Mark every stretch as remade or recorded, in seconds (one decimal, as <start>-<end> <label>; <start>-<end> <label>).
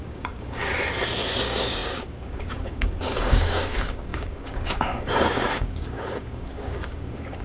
0.0-0.6 remade; 0.6-1.4 recorded; 1.4-7.4 remade